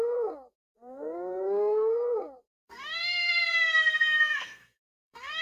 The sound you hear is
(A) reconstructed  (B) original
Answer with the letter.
A